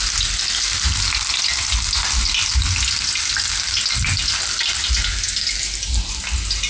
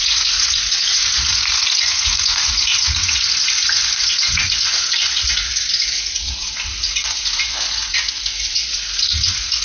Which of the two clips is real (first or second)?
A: first